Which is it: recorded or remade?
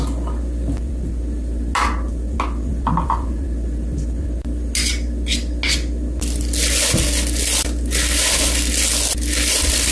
recorded